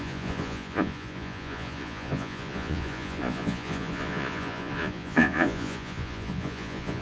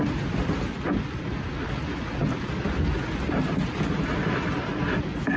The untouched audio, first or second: second